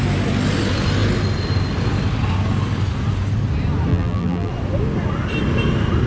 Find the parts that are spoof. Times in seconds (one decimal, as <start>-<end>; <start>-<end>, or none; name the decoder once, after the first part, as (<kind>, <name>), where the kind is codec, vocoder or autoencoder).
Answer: 3.9-4.5 (vocoder, BigVGAN v2)